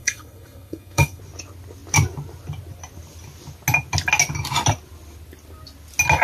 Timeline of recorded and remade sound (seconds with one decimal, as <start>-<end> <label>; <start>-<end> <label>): 0.0-1.2 remade; 1.2-6.2 recorded